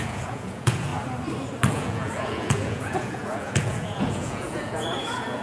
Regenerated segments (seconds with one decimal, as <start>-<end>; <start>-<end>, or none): 0.0-0.9; 1.7-5.4